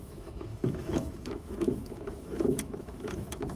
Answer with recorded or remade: remade